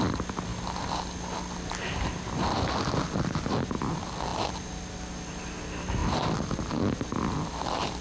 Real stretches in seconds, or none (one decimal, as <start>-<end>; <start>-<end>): 0.0-8.0